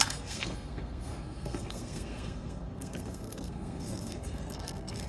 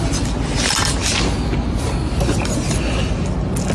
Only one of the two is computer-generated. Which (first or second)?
first